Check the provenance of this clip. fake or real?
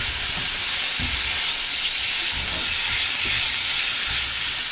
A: real